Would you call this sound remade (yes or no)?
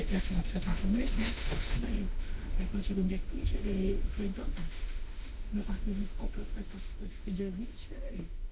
yes